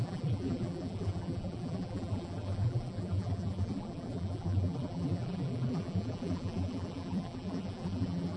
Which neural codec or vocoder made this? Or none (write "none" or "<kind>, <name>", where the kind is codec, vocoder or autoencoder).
vocoder, BigVGAN v2